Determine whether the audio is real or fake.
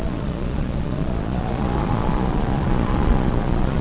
fake